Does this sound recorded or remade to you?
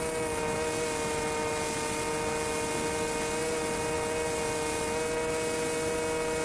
recorded